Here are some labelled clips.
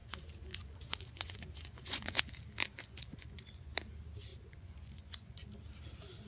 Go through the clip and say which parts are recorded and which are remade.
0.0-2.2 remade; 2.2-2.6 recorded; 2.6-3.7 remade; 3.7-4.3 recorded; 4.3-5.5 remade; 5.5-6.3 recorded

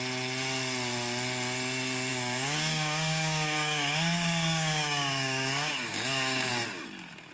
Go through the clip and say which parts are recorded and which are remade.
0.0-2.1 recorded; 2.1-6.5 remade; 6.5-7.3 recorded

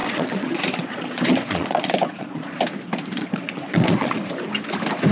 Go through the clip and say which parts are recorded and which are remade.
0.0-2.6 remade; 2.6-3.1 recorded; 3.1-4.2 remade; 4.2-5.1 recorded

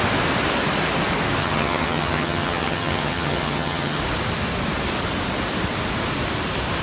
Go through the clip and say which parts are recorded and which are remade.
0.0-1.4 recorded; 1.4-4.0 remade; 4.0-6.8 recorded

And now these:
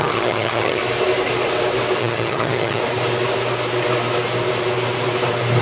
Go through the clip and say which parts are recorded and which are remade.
0.0-0.8 remade; 0.8-2.0 recorded; 2.0-2.8 remade; 2.8-5.6 recorded

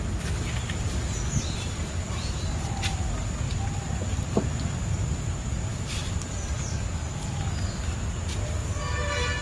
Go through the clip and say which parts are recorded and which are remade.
0.0-4.1 recorded; 4.1-5.1 remade; 5.1-5.7 recorded; 5.7-7.9 remade; 7.9-9.4 recorded

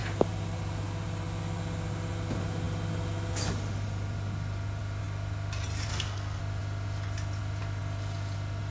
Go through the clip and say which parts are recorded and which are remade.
0.0-5.9 recorded; 5.9-6.4 remade; 6.4-8.7 recorded

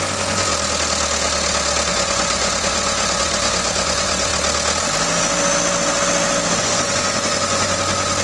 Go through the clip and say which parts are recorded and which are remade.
0.0-0.5 remade; 0.5-1.9 recorded; 1.9-4.3 remade; 4.3-6.6 recorded; 6.6-8.2 remade